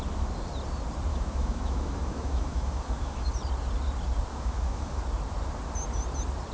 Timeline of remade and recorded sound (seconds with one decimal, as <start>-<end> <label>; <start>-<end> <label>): 0.0-1.1 recorded; 1.1-3.3 remade; 3.3-4.3 recorded; 4.3-5.0 remade; 5.0-6.5 recorded